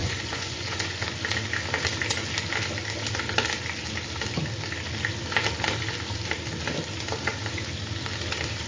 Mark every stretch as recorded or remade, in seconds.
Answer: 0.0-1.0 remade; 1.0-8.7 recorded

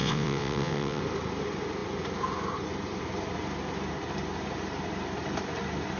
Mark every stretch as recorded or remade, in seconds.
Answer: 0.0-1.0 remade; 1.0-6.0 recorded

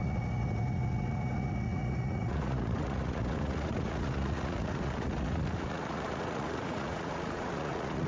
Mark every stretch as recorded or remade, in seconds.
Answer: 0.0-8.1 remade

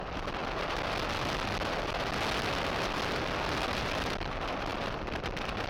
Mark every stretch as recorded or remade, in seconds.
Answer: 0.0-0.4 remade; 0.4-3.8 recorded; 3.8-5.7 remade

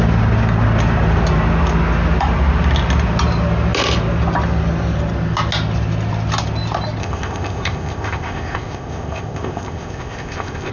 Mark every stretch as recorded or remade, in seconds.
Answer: 0.0-7.0 recorded; 7.0-10.7 remade

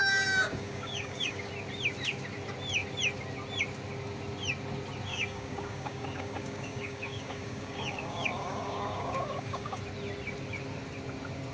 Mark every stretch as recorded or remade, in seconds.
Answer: 0.0-1.5 remade; 1.5-5.1 recorded; 5.1-9.8 remade; 9.8-11.5 recorded

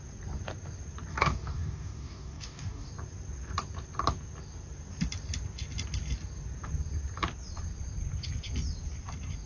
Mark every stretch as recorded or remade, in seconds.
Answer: 0.0-1.1 recorded; 1.1-2.9 remade; 2.9-9.5 recorded

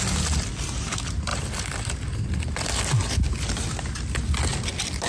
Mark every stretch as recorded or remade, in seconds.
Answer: 0.0-5.1 recorded